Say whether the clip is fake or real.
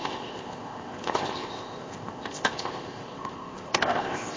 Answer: fake